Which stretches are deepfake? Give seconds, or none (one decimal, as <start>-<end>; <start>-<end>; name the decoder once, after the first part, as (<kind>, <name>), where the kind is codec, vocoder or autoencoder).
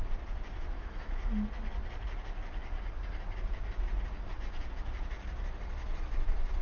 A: 0.5-1.3 (autoencoder, DAC-VAE)